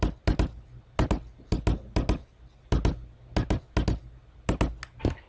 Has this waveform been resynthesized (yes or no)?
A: no